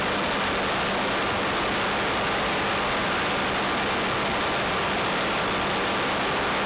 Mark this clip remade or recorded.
recorded